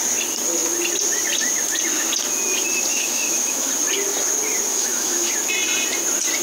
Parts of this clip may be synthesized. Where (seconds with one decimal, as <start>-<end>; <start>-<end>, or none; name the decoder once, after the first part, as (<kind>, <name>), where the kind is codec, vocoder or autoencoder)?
2.9-3.7 (autoencoder, DAC-VAE); 4.7-5.3